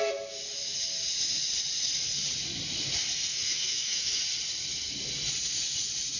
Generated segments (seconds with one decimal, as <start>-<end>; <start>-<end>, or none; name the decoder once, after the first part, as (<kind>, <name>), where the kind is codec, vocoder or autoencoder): 3.3-4.2 (autoencoder, DAC-VAE)

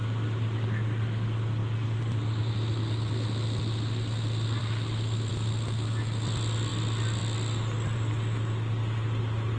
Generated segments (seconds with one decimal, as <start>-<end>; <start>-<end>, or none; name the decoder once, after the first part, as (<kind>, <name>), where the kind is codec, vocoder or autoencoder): none

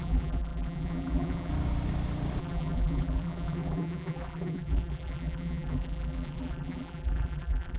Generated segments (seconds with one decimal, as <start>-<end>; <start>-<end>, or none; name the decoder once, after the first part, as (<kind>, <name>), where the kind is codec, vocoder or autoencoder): 0.0-1.5 (vocoder, BigVGAN v2); 2.4-7.8

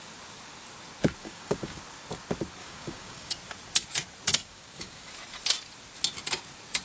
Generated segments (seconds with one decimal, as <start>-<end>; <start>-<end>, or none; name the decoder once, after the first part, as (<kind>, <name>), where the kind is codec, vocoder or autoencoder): 1.2-1.8 (codec, DAC); 2.6-3.3; 4.3-5.1